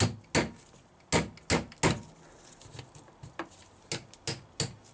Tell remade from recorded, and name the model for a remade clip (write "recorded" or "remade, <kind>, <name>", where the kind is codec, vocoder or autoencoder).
recorded